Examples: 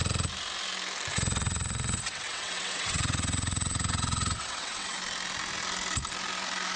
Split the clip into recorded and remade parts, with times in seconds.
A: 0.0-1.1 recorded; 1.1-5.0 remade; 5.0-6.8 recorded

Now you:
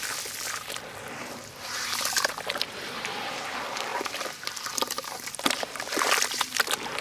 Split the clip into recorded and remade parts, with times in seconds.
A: 0.0-3.9 recorded; 3.9-7.0 remade

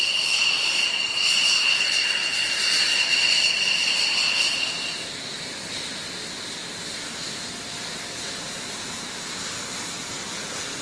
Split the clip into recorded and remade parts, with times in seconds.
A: 0.0-10.8 recorded

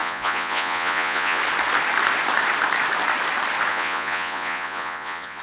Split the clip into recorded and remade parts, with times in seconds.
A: 0.0-1.4 remade; 1.4-3.7 recorded; 3.7-5.4 remade

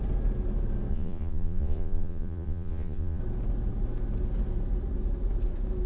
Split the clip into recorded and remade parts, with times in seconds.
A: 0.0-0.9 recorded; 0.9-3.2 remade; 3.2-5.9 recorded